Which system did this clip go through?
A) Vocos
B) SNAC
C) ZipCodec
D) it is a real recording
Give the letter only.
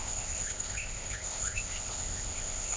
C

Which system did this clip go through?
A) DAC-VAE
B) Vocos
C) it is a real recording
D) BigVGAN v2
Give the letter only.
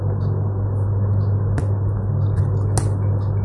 C